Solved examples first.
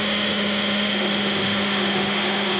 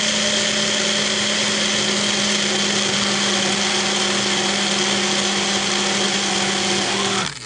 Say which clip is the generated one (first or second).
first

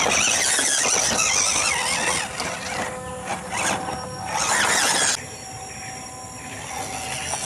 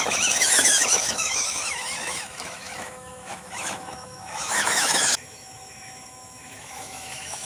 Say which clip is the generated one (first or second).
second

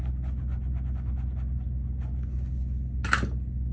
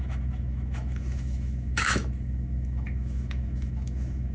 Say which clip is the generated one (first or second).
second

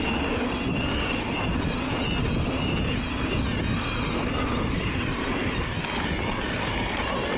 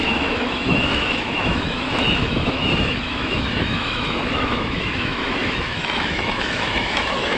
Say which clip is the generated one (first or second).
second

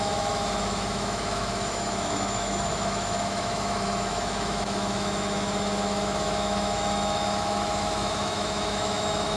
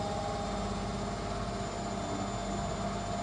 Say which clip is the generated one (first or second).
first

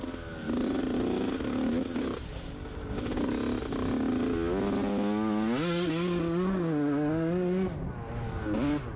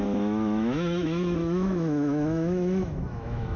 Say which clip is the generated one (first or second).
second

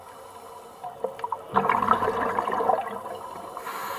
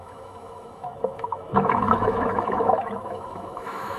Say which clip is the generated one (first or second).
second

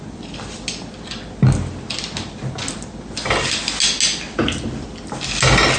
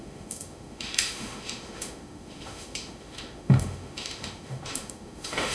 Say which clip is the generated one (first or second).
second